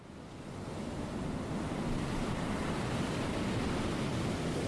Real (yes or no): yes